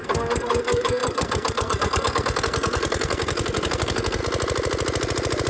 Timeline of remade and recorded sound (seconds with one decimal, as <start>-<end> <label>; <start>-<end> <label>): 0.0-4.2 remade; 4.2-5.5 recorded